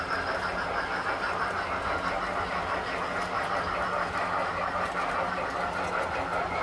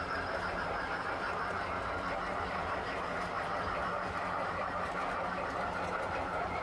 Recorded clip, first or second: first